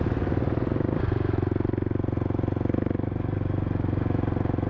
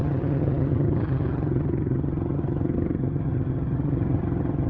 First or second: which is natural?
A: first